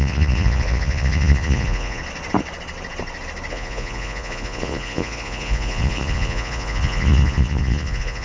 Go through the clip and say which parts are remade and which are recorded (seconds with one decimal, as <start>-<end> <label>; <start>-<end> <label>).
0.0-2.0 remade; 2.0-3.5 recorded; 3.5-8.2 remade